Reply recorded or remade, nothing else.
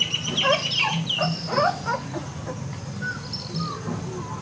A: recorded